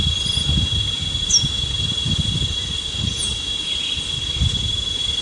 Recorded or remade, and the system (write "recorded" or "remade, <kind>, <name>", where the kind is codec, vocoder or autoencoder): recorded